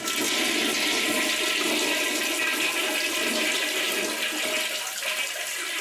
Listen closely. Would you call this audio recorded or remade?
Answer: recorded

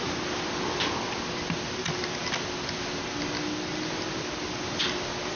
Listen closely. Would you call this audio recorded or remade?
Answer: recorded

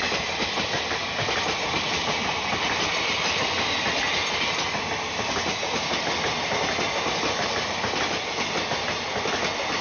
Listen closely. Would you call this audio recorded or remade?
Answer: recorded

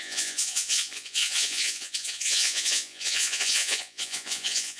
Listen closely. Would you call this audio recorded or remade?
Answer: remade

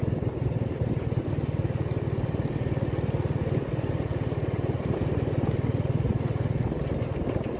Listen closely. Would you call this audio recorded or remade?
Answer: recorded